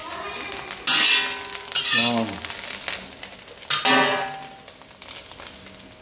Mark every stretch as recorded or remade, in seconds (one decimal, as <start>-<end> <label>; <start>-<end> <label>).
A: 0.0-0.5 remade; 0.5-6.0 recorded